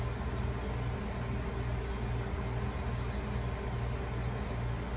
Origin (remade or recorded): recorded